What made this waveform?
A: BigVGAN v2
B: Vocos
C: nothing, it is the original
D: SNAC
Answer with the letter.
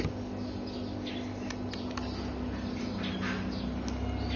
C